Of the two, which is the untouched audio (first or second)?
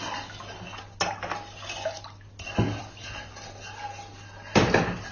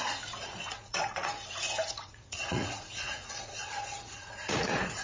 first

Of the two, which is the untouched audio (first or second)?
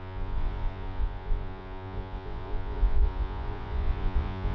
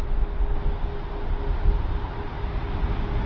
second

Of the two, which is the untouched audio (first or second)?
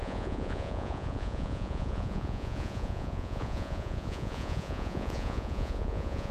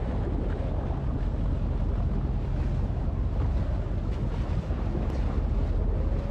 second